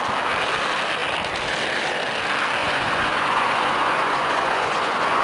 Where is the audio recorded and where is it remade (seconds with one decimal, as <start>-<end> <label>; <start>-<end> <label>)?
0.0-2.6 recorded; 2.6-5.2 remade